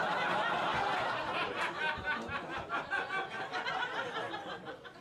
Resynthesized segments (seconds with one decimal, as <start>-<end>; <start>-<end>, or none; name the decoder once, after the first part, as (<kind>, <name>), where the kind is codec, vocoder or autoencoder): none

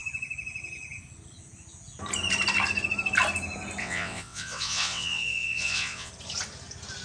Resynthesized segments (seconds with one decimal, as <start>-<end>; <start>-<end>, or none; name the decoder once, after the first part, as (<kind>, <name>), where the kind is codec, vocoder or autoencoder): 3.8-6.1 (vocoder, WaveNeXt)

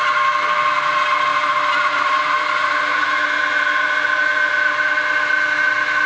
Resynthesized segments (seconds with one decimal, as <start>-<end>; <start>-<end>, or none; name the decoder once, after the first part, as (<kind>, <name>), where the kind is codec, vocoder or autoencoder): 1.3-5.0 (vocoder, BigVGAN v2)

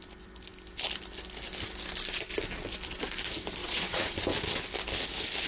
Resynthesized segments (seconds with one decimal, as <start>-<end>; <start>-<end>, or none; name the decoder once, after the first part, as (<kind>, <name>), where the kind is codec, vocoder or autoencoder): 3.6-4.2 (vocoder, Vocos)

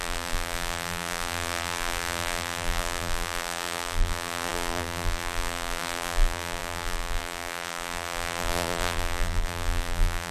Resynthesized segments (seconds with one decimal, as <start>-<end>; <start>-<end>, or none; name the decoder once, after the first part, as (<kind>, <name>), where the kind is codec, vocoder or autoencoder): 0.0-10.3 (vocoder, BigVGAN v2)

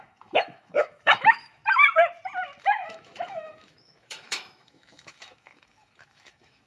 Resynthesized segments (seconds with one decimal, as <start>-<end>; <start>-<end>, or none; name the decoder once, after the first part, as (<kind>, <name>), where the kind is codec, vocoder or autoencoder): 0.0-1.6 (autoencoder, DAC-VAE); 2.6-6.7

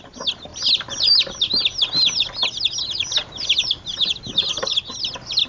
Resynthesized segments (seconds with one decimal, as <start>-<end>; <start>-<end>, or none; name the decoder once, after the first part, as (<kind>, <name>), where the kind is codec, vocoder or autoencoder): none